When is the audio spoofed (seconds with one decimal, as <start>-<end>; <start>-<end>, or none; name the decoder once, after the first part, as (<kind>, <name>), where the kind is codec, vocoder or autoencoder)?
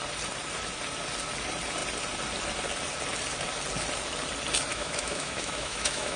4.7-6.2 (autoencoder, DAC-VAE)